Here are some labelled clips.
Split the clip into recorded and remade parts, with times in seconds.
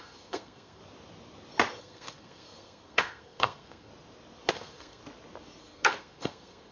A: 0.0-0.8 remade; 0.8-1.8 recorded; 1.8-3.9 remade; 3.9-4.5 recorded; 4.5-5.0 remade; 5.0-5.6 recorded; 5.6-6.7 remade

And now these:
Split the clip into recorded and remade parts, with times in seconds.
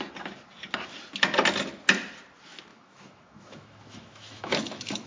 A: 0.0-2.7 recorded; 2.7-5.1 remade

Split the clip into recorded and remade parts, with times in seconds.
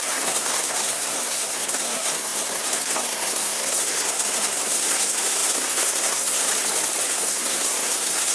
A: 0.0-6.5 remade; 6.5-7.0 recorded; 7.0-8.3 remade